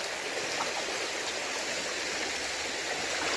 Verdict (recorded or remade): remade